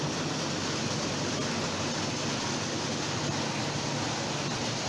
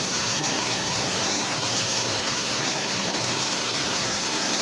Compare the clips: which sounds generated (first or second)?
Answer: second